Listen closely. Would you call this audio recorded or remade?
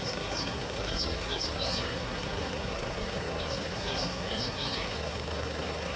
remade